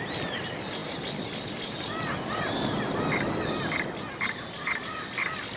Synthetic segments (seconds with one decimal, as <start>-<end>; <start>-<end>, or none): none